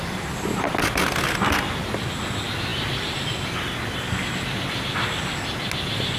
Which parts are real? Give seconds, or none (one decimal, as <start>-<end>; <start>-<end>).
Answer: 0.0-6.2